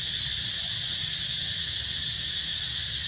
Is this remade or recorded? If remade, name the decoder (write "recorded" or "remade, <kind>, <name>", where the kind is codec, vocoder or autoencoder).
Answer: recorded